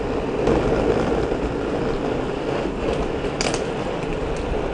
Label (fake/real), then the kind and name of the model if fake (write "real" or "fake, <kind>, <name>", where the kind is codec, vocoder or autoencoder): real